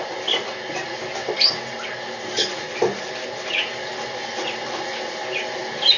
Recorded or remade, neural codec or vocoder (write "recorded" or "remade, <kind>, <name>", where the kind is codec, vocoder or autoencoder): recorded